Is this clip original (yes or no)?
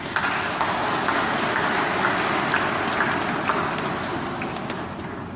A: yes